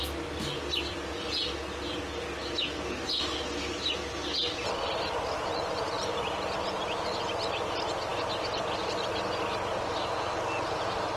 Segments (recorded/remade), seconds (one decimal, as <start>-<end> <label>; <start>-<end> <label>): 0.0-11.2 recorded